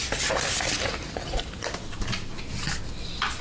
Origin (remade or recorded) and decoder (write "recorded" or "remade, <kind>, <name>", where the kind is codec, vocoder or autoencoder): recorded